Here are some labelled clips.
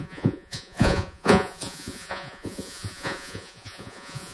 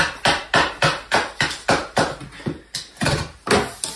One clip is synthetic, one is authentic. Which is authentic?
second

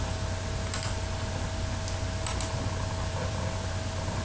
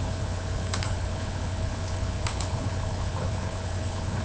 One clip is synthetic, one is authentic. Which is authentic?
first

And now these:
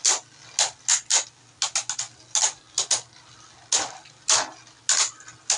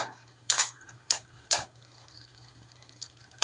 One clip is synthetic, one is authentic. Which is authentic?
first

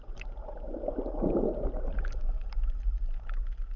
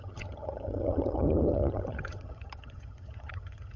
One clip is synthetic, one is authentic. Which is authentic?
first